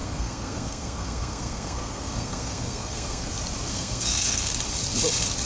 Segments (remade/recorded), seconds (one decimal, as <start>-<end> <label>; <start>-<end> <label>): 0.0-3.3 remade; 3.3-3.7 recorded; 3.7-4.5 remade; 4.5-5.5 recorded